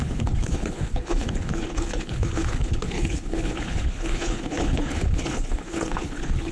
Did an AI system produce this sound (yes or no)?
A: yes